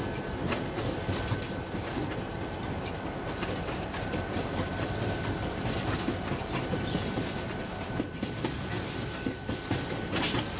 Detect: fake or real real